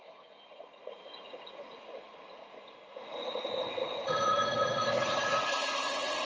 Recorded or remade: remade